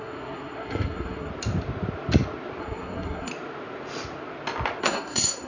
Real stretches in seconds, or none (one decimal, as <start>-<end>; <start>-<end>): 1.3-2.6; 3.3-4.8